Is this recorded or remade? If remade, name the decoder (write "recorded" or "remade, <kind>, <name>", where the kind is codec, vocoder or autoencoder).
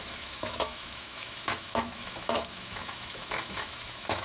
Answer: remade, autoencoder, DAC-VAE